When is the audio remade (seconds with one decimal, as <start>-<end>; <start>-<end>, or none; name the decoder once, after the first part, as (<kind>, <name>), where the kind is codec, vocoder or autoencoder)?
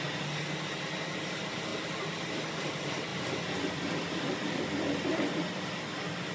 1.7-2.5 (vocoder, BigVGAN v2); 3.1-4.6